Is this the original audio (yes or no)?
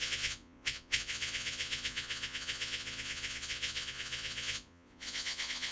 no